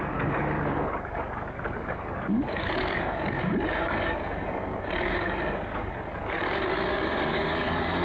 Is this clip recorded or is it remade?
remade